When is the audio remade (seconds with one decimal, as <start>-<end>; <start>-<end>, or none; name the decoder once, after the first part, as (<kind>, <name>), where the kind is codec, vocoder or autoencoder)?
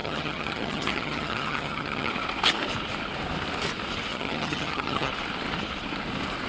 0.0-2.1 (vocoder, HiFi-GAN); 4.1-5.1